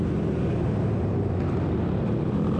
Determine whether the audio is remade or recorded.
recorded